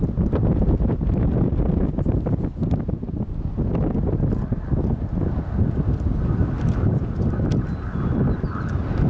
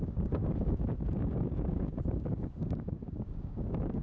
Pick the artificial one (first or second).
second